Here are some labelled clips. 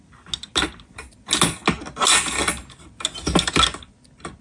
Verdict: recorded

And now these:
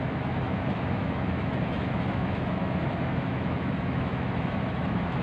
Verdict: remade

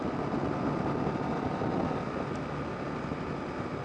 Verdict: recorded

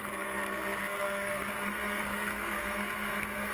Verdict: remade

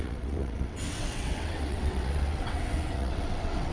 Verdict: remade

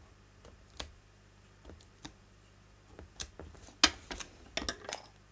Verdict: recorded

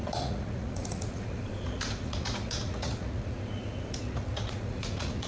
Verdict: remade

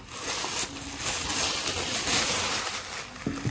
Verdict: recorded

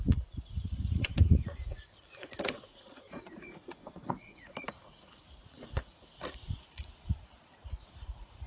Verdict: remade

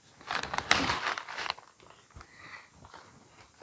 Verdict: recorded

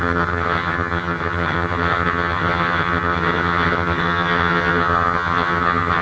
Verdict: remade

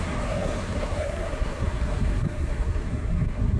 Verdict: remade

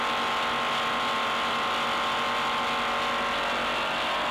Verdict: recorded